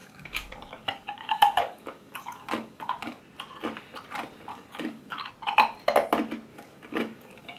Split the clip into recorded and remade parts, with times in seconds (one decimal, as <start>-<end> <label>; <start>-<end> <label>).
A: 0.0-3.2 remade; 3.2-4.5 recorded; 4.5-5.3 remade; 5.3-6.5 recorded; 6.5-7.6 remade